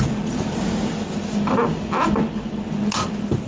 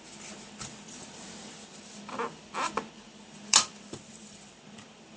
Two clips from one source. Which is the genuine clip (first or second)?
first